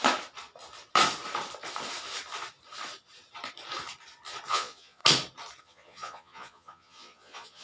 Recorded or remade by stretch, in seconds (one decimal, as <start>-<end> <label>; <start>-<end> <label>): 0.0-4.5 recorded; 4.5-5.0 remade; 5.0-5.6 recorded; 5.6-7.6 remade